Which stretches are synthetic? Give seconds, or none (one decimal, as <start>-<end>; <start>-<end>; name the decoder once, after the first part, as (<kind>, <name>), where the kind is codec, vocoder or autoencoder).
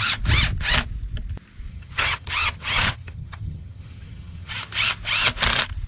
1.7-4.5 (vocoder, HiFi-GAN)